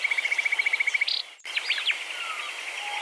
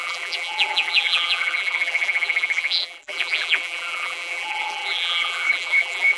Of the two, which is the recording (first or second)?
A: first